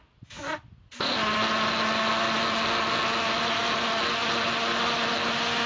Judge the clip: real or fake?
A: real